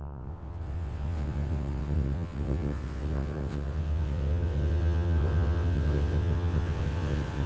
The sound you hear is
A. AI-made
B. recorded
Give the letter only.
A